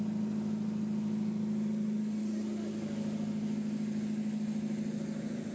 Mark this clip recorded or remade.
recorded